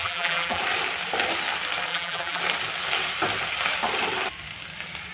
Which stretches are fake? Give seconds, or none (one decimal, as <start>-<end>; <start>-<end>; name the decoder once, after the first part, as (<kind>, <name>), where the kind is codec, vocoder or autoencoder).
0.0-0.6 (vocoder, BigVGAN v2); 1.9-2.4